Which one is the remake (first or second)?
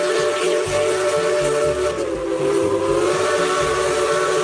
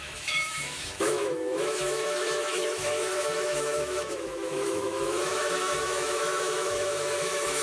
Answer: second